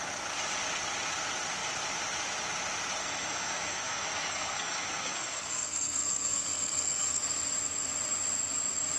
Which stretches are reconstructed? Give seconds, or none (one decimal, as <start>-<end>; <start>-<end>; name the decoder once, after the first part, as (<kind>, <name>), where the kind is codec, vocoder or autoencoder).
3.0-7.2 (codec, SNAC)